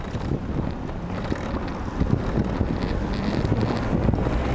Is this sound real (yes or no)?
yes